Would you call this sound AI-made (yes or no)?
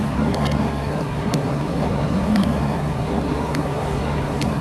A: yes